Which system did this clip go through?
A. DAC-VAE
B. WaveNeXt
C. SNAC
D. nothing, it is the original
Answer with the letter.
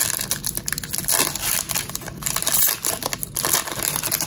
D